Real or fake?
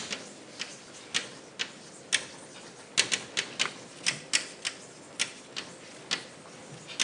real